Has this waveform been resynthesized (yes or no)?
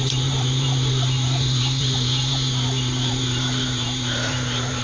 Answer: yes